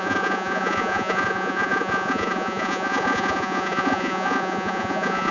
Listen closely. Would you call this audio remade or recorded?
remade